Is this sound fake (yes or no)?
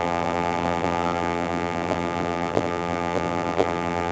yes